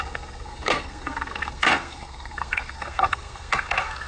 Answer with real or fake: fake